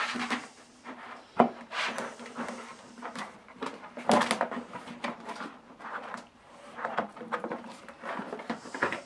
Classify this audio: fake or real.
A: fake